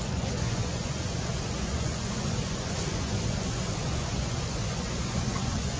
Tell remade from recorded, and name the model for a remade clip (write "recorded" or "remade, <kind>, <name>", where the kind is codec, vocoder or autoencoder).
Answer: remade, vocoder, Vocos